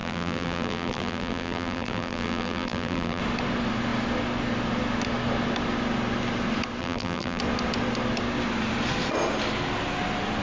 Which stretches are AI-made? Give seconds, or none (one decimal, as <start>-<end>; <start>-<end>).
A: 0.0-3.2; 6.8-7.4